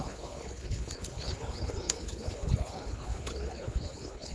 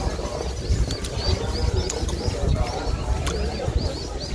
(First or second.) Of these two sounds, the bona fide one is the second